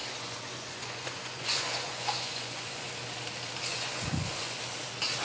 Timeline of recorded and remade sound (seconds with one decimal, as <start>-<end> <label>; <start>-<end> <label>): 0.0-2.9 remade; 2.9-3.7 recorded; 3.7-4.6 remade; 4.6-5.2 recorded

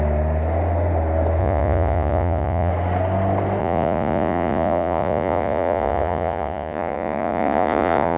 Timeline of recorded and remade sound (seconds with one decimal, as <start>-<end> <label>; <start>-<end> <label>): 0.0-1.4 recorded; 1.4-2.7 remade; 2.7-3.6 recorded; 3.6-8.2 remade

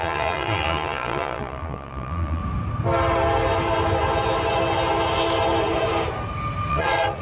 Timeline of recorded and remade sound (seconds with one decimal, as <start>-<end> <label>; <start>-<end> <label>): 0.0-2.4 remade; 2.4-6.7 recorded; 6.7-7.2 remade

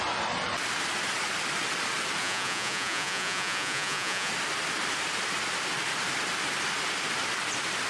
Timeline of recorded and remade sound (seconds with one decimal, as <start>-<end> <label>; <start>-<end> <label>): 0.0-2.2 recorded; 2.2-4.3 remade; 4.3-7.9 recorded

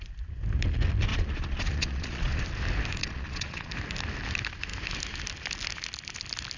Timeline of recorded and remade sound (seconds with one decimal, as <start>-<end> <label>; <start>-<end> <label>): 0.0-1.1 recorded; 1.1-2.4 remade; 2.4-3.0 recorded; 3.0-3.7 remade; 3.7-6.6 recorded

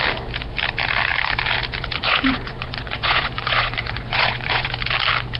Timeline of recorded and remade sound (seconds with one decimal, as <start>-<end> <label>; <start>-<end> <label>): 0.0-2.0 recorded; 2.0-4.7 remade; 4.7-5.4 recorded

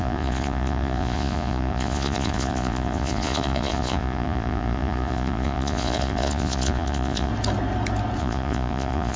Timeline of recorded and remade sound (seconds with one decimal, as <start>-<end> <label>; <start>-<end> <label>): 0.0-7.3 remade; 7.3-8.2 recorded; 8.2-9.2 remade

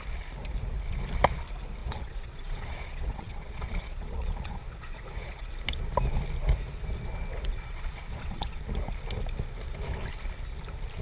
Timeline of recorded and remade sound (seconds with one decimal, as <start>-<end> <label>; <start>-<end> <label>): 0.0-1.8 recorded; 1.8-5.5 remade; 5.5-7.5 recorded; 7.5-8.6 remade; 8.6-11.0 recorded